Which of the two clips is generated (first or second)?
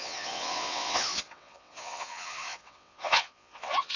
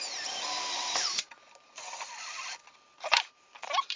first